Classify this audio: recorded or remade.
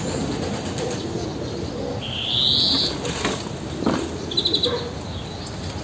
recorded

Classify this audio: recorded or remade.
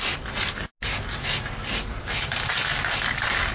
recorded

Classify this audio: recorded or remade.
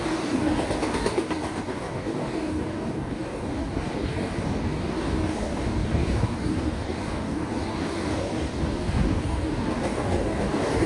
remade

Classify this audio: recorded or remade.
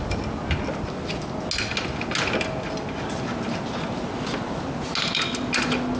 recorded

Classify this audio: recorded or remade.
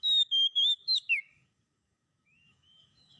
remade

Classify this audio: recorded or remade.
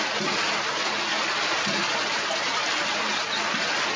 recorded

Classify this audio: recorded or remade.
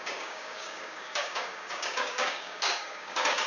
remade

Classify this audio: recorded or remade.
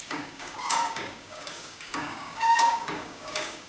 remade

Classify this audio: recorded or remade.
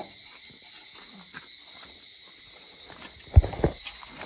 recorded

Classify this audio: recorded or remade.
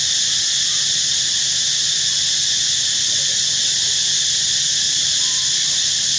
recorded